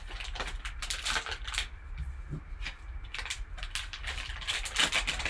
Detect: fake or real real